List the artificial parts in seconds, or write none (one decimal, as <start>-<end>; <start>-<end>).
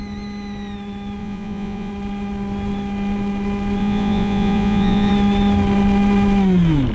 1.2-1.9; 3.8-5.1